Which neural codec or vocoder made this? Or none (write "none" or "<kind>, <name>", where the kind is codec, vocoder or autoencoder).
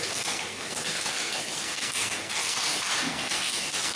codec, SNAC